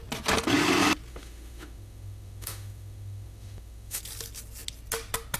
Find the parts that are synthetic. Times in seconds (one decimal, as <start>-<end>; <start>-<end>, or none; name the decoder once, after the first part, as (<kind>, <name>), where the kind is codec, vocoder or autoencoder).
1.1-4.0 (autoencoder, DAC-VAE)